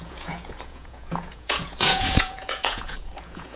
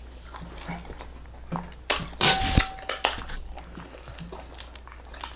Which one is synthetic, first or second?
first